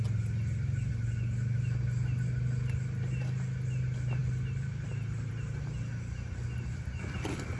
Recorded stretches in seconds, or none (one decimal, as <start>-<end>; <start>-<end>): 0.0-7.6